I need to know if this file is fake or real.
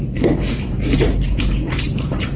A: real